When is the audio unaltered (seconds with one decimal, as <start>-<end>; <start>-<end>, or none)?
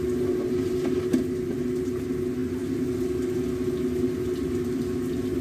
0.0-5.4